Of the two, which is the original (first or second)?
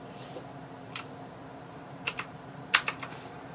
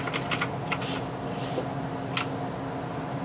second